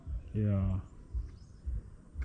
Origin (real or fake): fake